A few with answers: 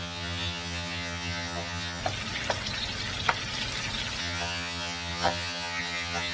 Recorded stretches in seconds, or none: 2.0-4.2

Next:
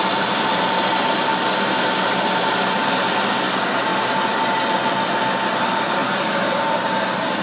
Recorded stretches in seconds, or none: 0.0-6.0; 6.8-7.4

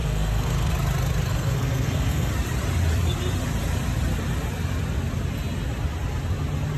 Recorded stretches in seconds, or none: 0.7-1.3; 2.3-6.8

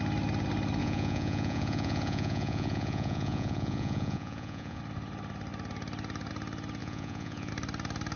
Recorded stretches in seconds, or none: 0.0-0.8; 4.8-6.8; 7.5-8.2

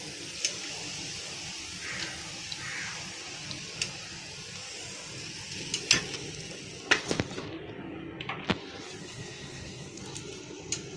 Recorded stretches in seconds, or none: 0.0-9.0; 10.0-11.0

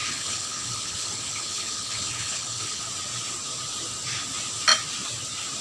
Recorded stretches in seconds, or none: 2.8-5.6